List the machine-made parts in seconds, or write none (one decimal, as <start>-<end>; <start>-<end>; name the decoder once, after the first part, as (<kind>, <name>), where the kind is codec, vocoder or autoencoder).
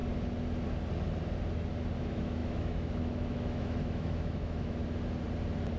2.0-4.8 (autoencoder, DAC-VAE)